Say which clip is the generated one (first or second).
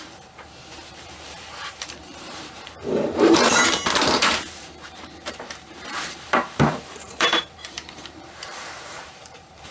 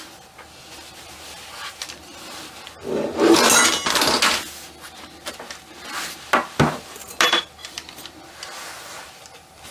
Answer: first